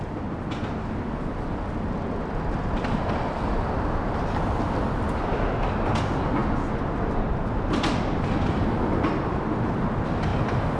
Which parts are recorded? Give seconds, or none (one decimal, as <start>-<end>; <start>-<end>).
0.0-10.8

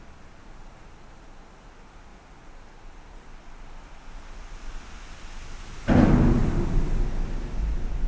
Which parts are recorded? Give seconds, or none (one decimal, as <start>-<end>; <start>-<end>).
0.0-8.1

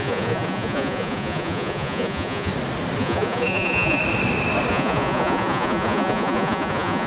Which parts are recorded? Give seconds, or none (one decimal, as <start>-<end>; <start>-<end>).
2.5-3.0; 4.0-4.7

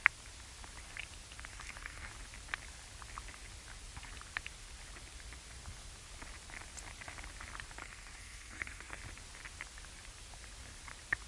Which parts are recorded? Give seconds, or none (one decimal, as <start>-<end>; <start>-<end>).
0.0-1.5; 2.1-7.8; 9.0-11.3

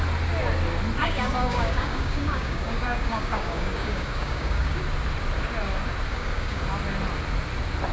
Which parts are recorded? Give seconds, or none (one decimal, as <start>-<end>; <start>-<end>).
0.0-1.0; 4.8-6.1; 6.6-7.9

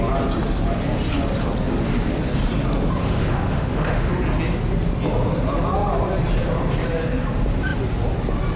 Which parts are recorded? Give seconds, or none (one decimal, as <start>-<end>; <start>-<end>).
0.0-3.0; 4.1-8.6

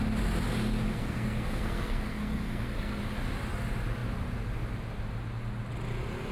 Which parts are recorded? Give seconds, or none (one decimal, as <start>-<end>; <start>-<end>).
0.0-0.9; 3.0-6.3